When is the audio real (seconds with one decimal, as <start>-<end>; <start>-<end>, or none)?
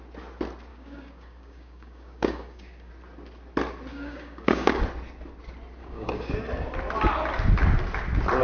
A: 0.0-0.7; 2.9-3.9; 4.8-5.8; 6.3-8.4